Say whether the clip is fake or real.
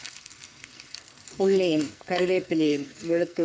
fake